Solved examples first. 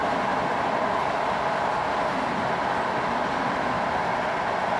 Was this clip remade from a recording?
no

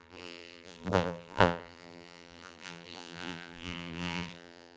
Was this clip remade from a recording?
yes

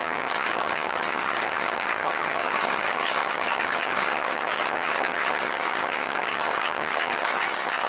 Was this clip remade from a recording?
yes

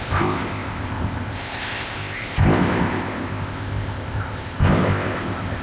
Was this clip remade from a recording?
yes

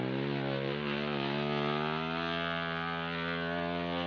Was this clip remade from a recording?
no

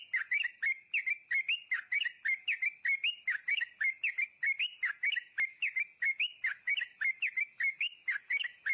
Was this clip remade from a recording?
no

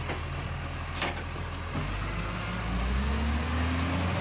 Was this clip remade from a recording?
no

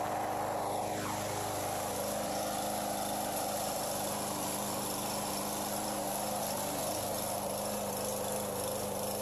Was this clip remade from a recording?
no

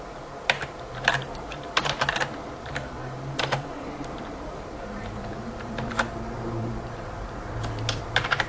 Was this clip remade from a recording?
yes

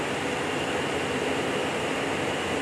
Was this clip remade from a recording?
no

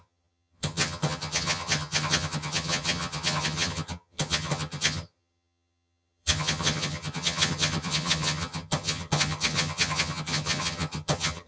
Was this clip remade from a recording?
yes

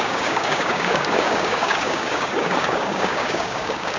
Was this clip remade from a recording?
yes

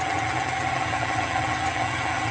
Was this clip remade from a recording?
yes